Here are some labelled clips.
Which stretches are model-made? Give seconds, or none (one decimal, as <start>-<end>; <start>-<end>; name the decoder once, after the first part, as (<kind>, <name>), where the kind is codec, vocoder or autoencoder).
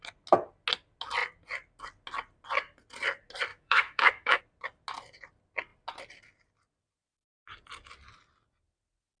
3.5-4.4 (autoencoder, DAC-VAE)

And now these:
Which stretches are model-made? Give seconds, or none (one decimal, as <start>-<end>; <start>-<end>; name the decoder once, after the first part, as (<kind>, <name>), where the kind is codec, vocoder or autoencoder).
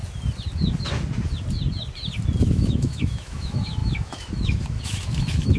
2.4-5.6 (autoencoder, DAC-VAE)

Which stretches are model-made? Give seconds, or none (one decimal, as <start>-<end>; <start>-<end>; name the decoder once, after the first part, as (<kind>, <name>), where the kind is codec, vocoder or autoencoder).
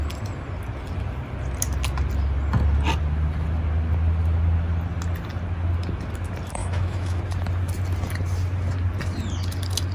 6.6-7.2 (autoencoder, DAC-VAE)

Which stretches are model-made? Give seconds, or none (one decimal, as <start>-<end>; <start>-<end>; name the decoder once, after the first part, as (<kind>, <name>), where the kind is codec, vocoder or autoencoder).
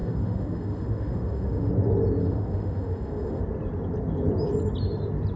0.0-1.7 (autoencoder, DAC-VAE); 2.2-3.4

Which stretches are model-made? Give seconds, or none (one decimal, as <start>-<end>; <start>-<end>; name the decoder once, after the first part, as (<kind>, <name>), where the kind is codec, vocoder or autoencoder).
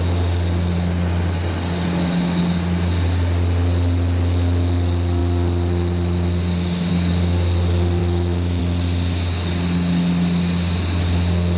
8.0-8.6 (autoencoder, DAC-VAE)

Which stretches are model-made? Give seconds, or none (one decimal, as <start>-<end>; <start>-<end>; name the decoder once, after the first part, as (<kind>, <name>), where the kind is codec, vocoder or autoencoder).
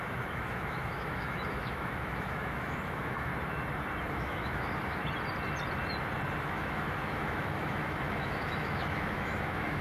0.0-3.3 (autoencoder, DAC-VAE); 4.1-5.0; 6.4-9.8